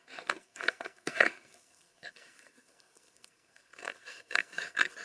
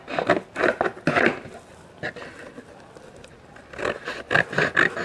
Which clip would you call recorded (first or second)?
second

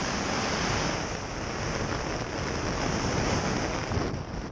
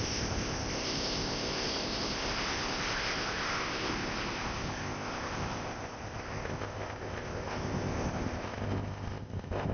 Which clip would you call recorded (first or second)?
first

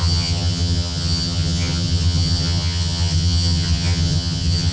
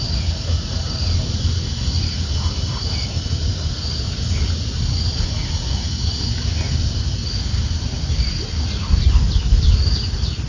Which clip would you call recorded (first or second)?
second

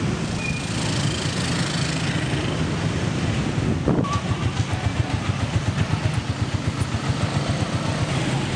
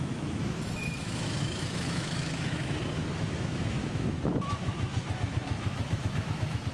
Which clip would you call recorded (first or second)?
first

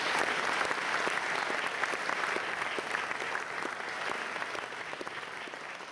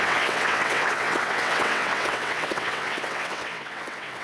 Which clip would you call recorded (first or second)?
first